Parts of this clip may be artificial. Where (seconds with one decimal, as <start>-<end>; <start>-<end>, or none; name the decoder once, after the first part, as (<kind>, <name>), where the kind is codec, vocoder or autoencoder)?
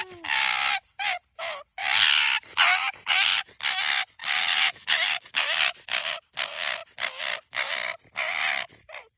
4.2-6.0 (autoencoder, DAC-VAE)